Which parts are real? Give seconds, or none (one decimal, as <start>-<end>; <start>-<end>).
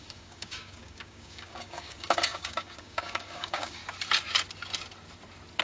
3.8-5.6